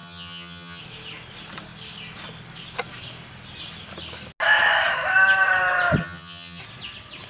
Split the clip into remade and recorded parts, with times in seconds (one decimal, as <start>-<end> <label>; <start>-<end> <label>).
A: 0.0-0.8 remade; 0.8-6.0 recorded; 6.0-6.6 remade; 6.6-7.3 recorded